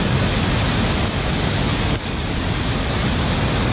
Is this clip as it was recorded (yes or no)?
yes